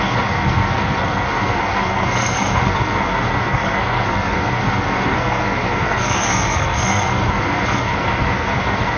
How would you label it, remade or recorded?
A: remade